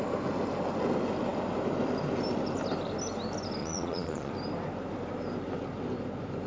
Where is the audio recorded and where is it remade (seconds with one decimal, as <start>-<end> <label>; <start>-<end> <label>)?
0.0-3.6 recorded; 3.6-4.3 remade; 4.3-6.5 recorded